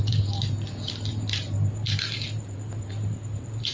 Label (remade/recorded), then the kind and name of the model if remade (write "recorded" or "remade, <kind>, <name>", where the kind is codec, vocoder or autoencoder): remade, vocoder, BigVGAN v2